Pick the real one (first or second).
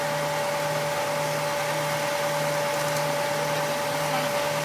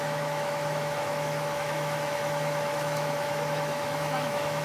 first